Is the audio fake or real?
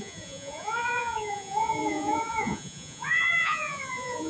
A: fake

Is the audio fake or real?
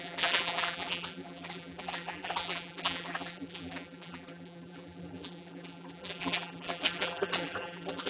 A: fake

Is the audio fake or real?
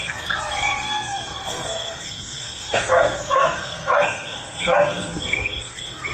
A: fake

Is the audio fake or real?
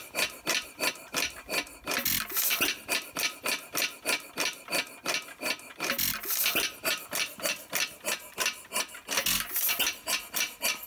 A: real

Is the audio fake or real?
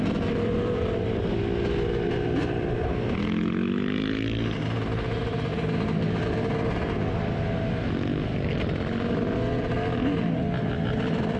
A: real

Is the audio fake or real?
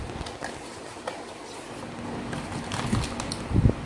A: real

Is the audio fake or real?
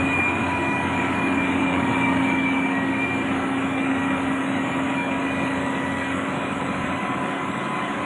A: fake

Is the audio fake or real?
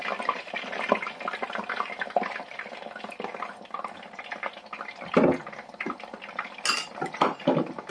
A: real